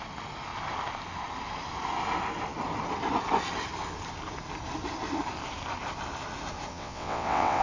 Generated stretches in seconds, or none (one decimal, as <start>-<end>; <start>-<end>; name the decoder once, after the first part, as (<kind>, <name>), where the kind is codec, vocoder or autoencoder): 6.7-7.6 (vocoder, WaveNeXt)